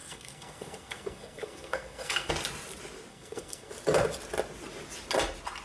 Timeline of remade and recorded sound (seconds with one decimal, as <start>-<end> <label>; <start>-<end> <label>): 0.0-2.3 remade; 2.3-3.1 recorded; 3.1-3.7 remade; 3.7-5.6 recorded